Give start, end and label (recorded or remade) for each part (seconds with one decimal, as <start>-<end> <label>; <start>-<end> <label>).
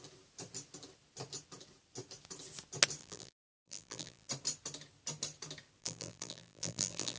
0.0-3.0 recorded; 3.0-4.3 remade; 4.3-5.8 recorded; 5.8-7.2 remade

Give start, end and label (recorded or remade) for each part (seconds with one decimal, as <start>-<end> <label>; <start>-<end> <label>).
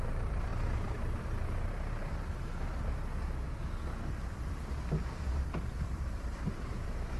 0.0-3.1 remade; 3.1-5.3 recorded; 5.3-7.2 remade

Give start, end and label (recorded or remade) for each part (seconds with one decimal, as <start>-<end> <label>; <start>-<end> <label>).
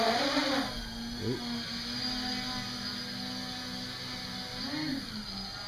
0.0-5.7 recorded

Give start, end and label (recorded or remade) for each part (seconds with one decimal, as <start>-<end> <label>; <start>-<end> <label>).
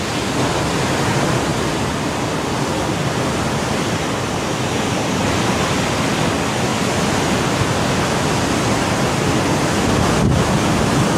0.0-1.5 recorded; 1.5-5.4 remade; 5.4-11.2 recorded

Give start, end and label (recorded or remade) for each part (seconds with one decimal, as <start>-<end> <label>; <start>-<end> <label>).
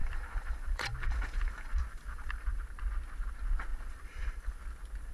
0.0-2.6 remade; 2.6-3.7 recorded; 3.7-4.6 remade; 4.6-5.1 recorded